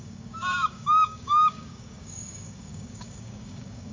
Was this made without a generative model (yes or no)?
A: no